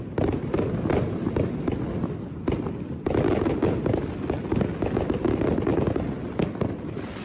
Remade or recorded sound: recorded